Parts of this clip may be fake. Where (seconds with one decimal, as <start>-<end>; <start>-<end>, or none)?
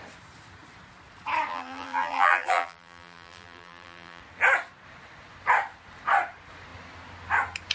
1.5-4.2